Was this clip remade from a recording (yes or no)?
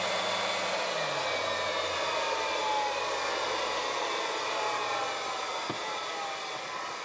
no